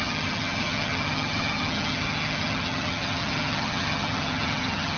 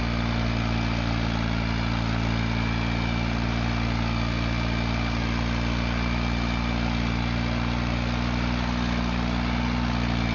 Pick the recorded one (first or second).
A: second